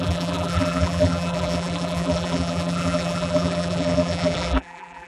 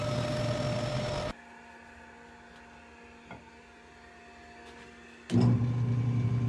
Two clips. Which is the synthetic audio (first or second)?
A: first